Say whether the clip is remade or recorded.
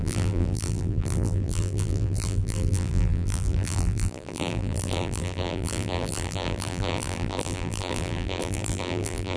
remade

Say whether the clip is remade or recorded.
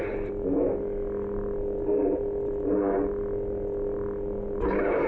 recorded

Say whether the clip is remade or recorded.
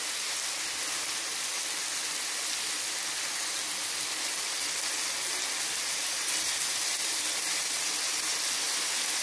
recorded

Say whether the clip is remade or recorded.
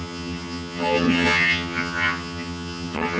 remade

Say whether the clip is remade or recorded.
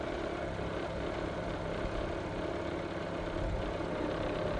recorded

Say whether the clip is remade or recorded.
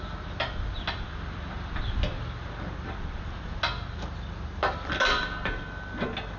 recorded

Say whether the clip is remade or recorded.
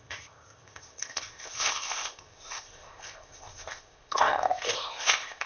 remade